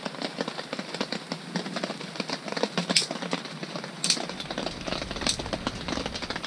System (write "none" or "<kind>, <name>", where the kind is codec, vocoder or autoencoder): none